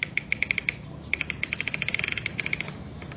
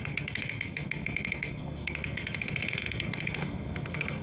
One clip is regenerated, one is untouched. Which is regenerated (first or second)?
second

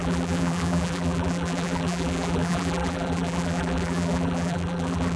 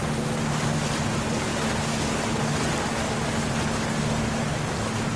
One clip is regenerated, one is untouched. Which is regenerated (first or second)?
first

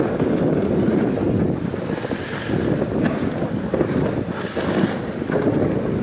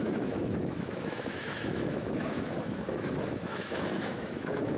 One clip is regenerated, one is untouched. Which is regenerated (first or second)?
second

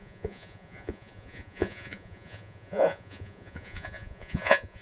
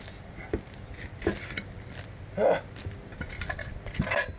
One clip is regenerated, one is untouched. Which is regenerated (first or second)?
first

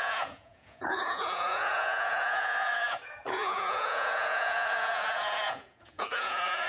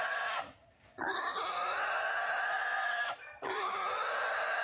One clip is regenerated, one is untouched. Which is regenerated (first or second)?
first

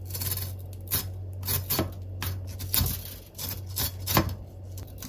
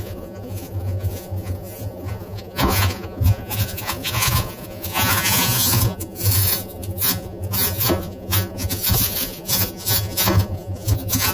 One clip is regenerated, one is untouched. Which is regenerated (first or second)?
second